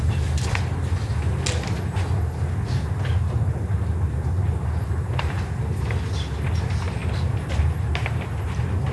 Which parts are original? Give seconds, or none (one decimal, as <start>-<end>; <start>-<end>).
0.0-8.9